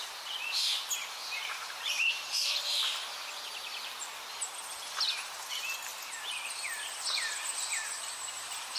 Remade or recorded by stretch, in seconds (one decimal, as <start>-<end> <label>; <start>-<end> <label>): 0.0-1.2 recorded; 1.2-3.2 remade; 3.2-5.9 recorded; 5.9-8.8 remade